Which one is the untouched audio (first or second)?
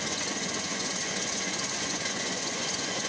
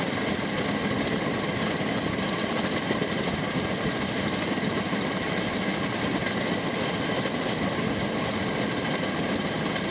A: second